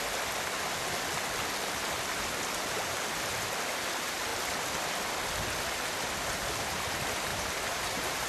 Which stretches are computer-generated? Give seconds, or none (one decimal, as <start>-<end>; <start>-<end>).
7.3-8.3